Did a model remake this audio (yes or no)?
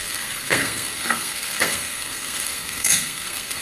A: yes